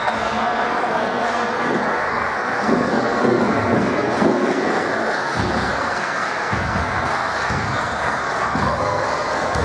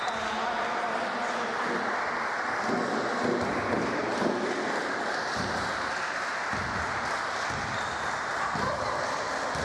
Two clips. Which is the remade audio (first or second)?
first